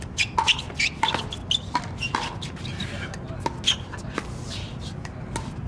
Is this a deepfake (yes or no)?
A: no